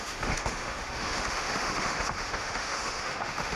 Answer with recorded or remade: remade